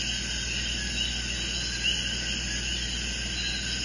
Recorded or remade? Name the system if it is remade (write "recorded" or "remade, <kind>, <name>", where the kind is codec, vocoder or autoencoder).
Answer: recorded